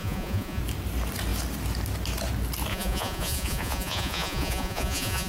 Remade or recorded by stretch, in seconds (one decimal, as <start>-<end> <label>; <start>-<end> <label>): 0.0-0.6 remade; 0.6-2.7 recorded; 2.7-5.3 remade